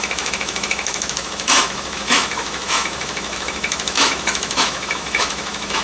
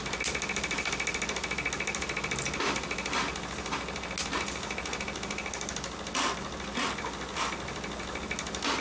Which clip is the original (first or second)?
second